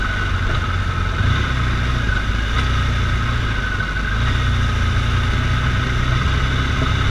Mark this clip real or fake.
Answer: real